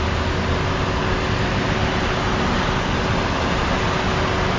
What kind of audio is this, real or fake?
real